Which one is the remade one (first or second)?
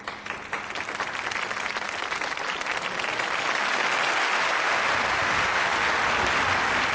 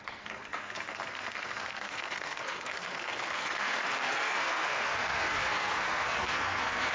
second